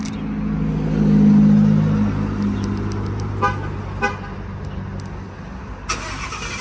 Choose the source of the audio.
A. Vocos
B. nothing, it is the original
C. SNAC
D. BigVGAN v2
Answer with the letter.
B